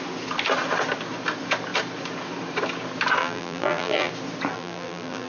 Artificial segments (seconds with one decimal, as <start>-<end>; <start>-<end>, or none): 3.2-4.1; 4.5-5.3